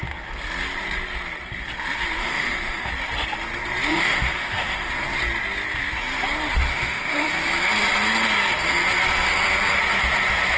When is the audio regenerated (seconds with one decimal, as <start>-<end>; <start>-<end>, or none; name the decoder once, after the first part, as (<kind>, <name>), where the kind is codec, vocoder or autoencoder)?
2.2-2.9 (autoencoder, DAC-VAE); 3.9-4.9; 6.7-7.3